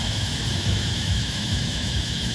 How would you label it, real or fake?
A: fake